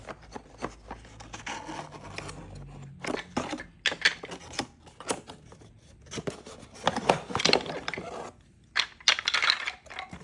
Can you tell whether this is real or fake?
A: real